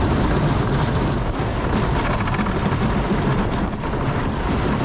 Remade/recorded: recorded